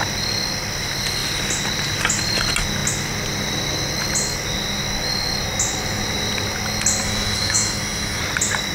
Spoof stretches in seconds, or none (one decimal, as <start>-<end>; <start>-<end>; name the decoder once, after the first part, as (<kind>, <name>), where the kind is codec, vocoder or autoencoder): 7.0-8.2 (autoencoder, DAC-VAE)